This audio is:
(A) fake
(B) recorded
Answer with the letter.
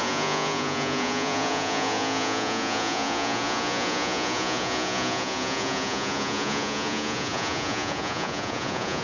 A